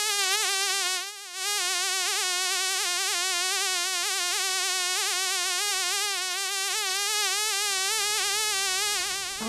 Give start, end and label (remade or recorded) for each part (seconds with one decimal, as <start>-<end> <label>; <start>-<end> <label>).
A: 0.0-9.5 recorded